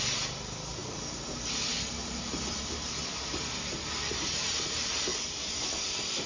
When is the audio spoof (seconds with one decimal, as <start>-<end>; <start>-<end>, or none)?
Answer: none